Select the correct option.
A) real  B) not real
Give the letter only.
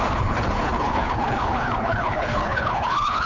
B